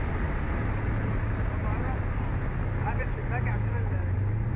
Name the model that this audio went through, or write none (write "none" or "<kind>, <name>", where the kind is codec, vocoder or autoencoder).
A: none